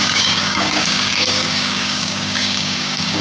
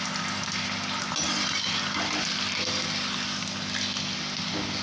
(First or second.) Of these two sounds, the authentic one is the second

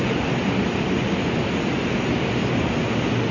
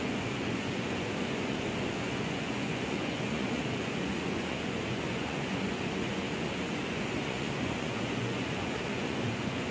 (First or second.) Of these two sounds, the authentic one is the first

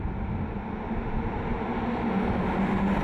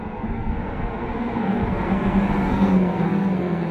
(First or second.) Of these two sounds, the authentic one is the first